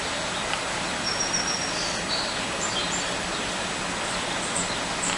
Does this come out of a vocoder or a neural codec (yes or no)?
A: no